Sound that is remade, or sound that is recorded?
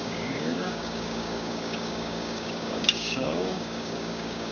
remade